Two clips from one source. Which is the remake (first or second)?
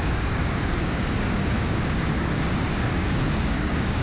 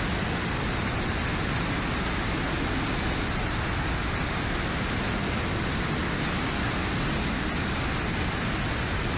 first